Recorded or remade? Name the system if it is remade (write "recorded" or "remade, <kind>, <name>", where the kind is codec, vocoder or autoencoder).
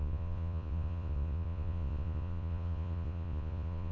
remade, vocoder, Vocos